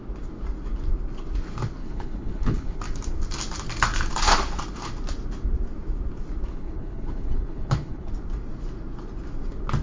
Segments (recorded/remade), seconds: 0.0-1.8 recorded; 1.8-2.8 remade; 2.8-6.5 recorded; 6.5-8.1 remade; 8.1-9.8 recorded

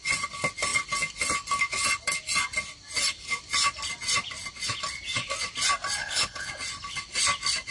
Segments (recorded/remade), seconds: 0.0-6.0 recorded; 6.0-6.5 remade; 6.5-7.7 recorded

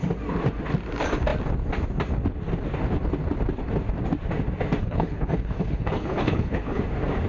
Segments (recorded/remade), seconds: 0.0-4.8 recorded; 4.8-6.8 remade; 6.8-7.3 recorded

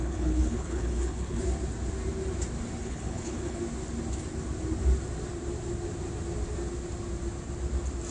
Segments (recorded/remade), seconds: 0.0-1.4 remade; 1.4-2.8 recorded; 2.8-3.6 remade; 3.6-8.1 recorded

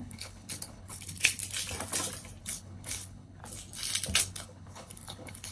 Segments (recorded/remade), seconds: 0.0-1.4 remade; 1.4-2.4 recorded; 2.4-3.4 remade; 3.4-4.2 recorded; 4.2-5.5 remade

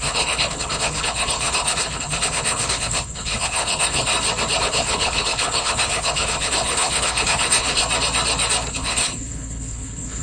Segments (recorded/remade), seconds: 0.0-4.1 remade; 4.1-4.6 recorded; 4.6-7.8 remade; 7.8-8.7 recorded; 8.7-10.2 remade

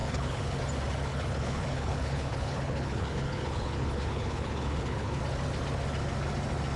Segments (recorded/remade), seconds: 0.0-0.6 remade; 0.6-1.1 recorded; 1.1-5.2 remade; 5.2-6.8 recorded

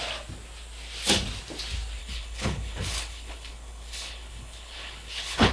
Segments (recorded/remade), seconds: 0.0-2.0 recorded; 2.0-5.5 remade